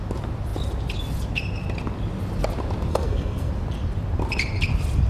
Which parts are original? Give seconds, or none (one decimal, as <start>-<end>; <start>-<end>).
0.0-2.9; 3.5-5.1